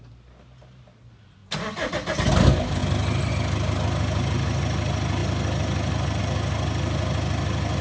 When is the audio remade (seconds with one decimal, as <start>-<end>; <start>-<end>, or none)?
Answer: none